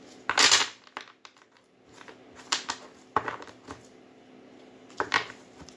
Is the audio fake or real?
real